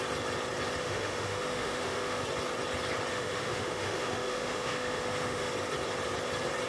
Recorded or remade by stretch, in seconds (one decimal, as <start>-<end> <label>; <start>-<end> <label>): 0.0-0.8 recorded; 0.8-2.2 remade; 2.2-3.1 recorded; 3.1-5.5 remade; 5.5-6.7 recorded